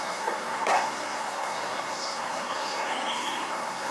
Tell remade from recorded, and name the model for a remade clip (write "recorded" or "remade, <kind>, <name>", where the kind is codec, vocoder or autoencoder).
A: remade, codec, SNAC